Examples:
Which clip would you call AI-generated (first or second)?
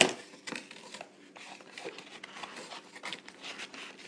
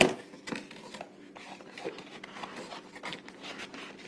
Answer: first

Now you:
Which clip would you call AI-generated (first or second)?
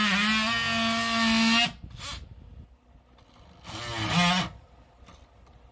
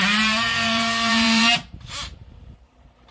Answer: second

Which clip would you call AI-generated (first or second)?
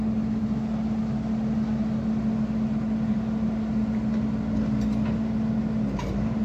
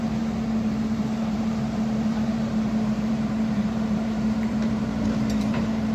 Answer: second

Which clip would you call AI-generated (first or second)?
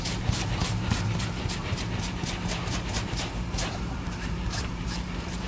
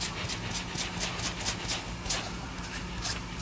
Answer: first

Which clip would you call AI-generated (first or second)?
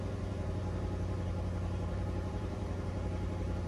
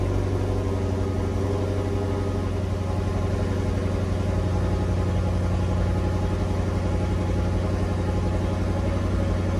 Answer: first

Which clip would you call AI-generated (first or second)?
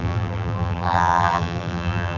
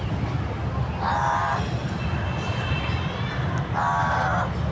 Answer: first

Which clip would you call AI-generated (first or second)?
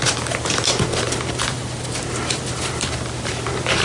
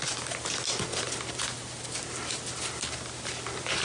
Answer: first